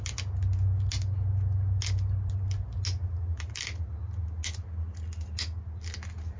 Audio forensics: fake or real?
real